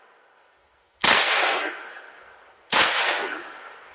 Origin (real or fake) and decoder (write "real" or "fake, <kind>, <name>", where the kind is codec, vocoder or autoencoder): fake, codec, SNAC